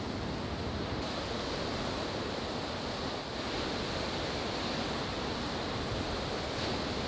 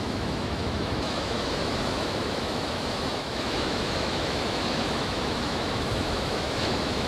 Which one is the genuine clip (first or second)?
first